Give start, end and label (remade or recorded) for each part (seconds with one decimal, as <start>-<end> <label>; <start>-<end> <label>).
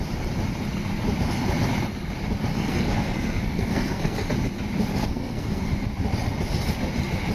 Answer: 0.0-2.5 recorded; 2.5-4.3 remade; 4.3-4.9 recorded; 4.9-5.7 remade; 5.7-7.3 recorded